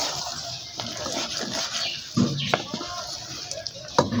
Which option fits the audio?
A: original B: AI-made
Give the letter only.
A